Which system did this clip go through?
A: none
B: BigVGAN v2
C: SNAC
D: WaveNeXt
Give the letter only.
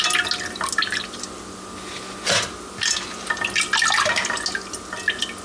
A